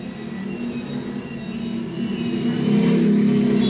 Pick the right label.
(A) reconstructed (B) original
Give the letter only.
B